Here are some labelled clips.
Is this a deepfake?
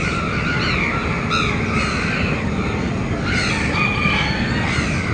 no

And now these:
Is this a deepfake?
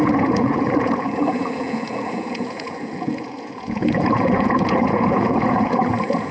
yes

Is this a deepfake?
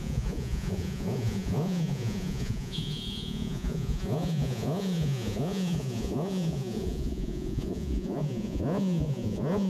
yes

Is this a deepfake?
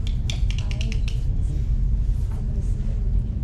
no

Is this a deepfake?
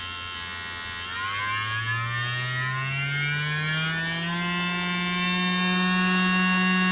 no